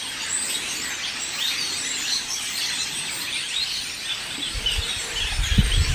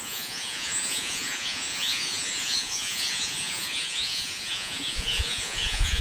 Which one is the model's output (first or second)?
second